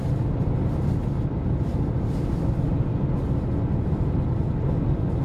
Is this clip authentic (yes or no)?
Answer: yes